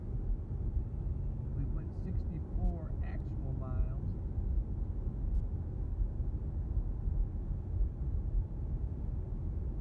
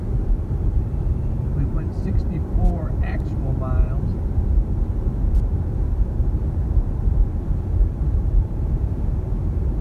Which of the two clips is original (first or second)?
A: first